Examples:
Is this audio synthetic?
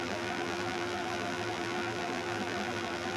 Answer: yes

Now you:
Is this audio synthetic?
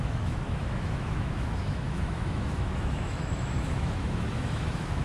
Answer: yes